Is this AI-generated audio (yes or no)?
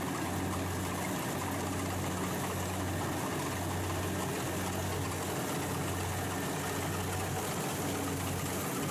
no